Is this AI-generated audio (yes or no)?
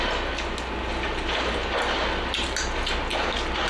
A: no